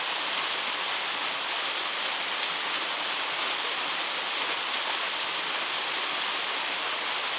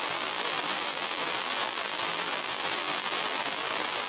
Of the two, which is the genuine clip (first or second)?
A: first